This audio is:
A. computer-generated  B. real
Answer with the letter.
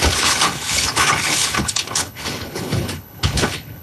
A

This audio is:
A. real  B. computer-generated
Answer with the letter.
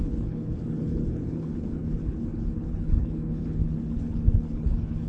B